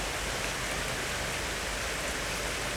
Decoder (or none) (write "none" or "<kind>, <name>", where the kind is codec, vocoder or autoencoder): none